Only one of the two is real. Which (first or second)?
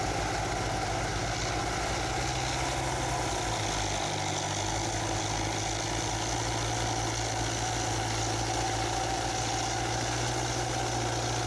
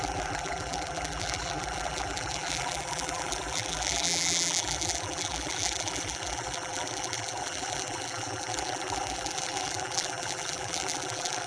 first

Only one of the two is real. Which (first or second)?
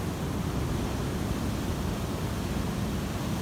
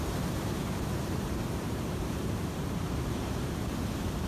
first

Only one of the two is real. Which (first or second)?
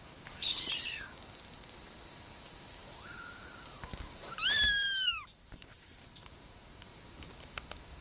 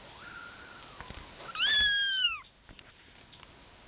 second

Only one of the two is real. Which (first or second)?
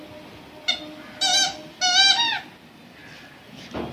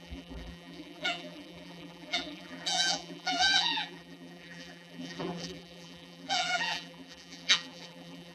first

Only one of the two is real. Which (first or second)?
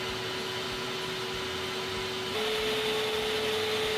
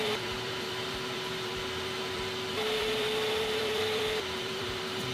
first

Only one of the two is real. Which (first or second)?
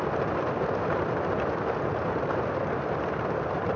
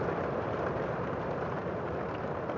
first